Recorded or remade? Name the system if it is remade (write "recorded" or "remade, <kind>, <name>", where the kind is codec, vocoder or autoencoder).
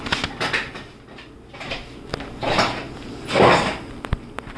recorded